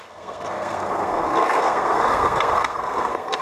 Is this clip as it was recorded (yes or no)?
no